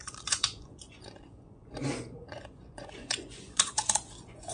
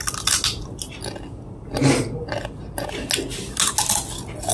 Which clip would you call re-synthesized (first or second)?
first